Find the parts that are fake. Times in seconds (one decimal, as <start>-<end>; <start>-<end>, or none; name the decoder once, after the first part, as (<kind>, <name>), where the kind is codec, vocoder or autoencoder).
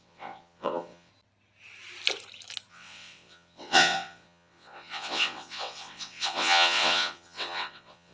0.0-1.1 (vocoder, WaveNeXt); 2.7-8.1